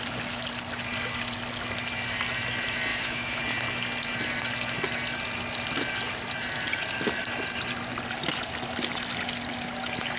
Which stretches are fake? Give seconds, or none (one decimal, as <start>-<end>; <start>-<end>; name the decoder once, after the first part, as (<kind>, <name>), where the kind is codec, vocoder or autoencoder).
2.9-3.4 (autoencoder, DAC-VAE)